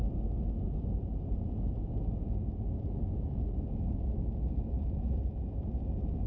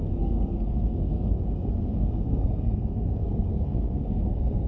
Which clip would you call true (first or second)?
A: first